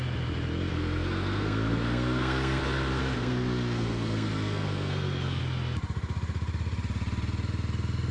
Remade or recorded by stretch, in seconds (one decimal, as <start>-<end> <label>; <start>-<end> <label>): 0.0-0.7 recorded; 0.7-2.6 remade; 2.6-3.0 recorded; 3.0-5.4 remade; 5.4-8.1 recorded